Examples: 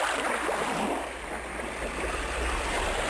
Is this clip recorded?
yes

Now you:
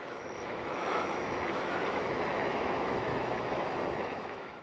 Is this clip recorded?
no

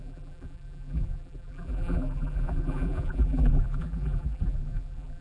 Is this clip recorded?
no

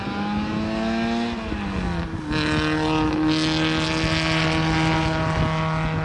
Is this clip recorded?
yes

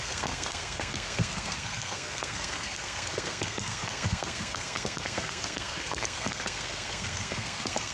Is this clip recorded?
no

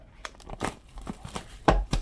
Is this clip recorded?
no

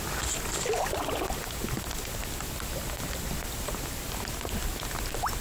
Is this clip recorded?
yes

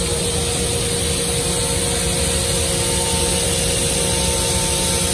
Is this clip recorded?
yes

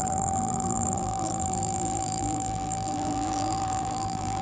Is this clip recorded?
no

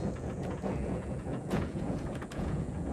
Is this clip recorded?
no